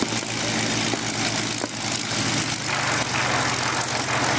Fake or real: real